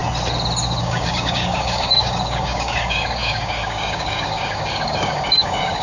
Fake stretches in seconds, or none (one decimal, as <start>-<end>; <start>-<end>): 0.8-5.8